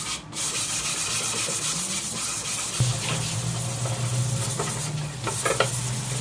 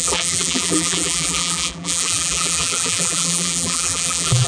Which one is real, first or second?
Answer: first